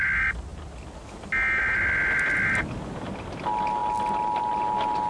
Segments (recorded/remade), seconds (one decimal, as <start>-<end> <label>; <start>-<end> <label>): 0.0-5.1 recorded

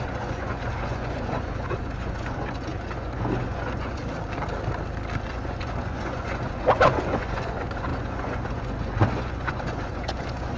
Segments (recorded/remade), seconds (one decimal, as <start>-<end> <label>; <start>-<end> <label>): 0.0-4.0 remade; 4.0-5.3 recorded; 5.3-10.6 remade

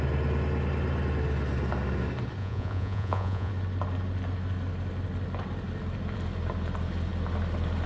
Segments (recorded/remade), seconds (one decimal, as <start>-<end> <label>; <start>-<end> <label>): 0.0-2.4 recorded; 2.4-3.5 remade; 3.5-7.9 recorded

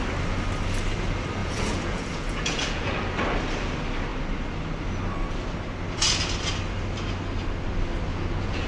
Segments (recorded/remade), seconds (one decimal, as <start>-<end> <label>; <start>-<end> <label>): 0.0-1.4 recorded; 1.4-3.0 remade; 3.0-8.1 recorded; 8.1-8.7 remade

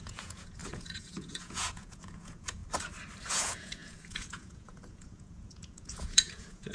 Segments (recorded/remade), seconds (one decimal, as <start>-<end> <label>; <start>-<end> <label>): 0.0-2.6 remade; 2.6-3.3 recorded; 3.3-6.7 remade

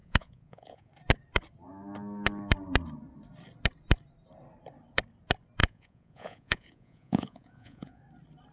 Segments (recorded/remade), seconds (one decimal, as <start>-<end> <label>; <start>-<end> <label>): 0.0-0.9 remade; 0.9-5.6 recorded; 5.6-8.0 remade; 8.0-8.5 recorded